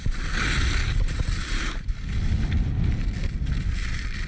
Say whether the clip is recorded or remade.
recorded